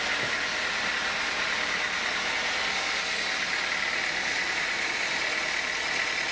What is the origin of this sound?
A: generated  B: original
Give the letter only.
B